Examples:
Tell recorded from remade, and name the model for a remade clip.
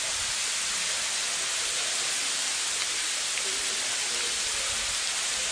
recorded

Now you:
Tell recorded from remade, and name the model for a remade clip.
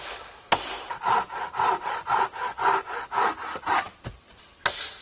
recorded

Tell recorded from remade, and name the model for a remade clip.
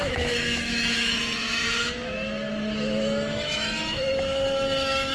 remade, autoencoder, DAC-VAE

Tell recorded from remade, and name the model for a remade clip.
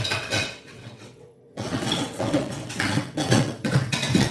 remade, vocoder, WaveNeXt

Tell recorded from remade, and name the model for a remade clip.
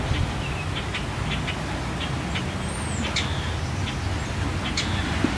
recorded